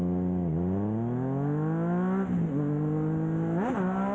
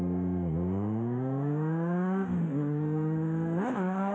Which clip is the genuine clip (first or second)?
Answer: first